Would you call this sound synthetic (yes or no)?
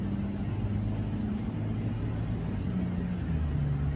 no